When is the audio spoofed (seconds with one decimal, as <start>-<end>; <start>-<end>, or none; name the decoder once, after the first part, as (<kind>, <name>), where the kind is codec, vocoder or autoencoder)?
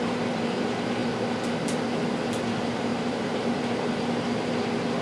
2.9-3.6 (vocoder, BigVGAN v2)